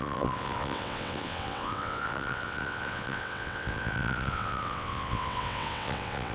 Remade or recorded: remade